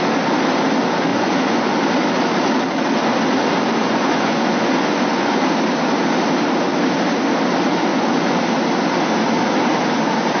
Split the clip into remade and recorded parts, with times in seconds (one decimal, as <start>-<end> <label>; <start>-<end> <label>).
0.0-1.1 recorded; 1.1-1.8 remade; 1.8-3.8 recorded; 3.8-5.4 remade; 5.4-7.9 recorded; 7.9-8.4 remade; 8.4-10.4 recorded